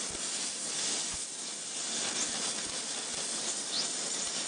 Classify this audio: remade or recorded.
recorded